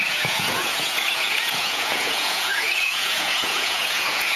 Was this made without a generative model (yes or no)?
no